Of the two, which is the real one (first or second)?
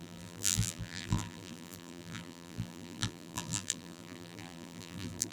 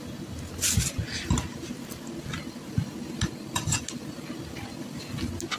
second